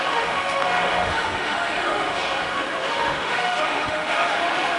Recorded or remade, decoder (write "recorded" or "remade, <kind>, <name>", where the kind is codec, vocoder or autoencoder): remade, autoencoder, DAC-VAE